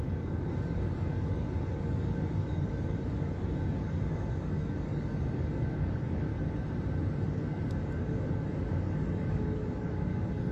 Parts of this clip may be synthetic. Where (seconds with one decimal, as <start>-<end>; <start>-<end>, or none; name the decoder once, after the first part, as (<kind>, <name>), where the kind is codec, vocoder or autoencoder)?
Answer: 0.0-6.3 (codec, DAC); 7.2-10.5